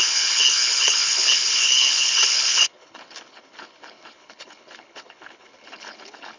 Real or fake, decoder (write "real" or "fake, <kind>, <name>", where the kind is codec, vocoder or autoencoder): fake, codec, HILCodec